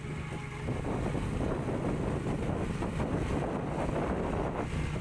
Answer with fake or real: real